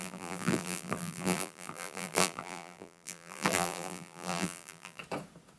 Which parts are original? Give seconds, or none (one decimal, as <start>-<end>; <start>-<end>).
5.0-5.6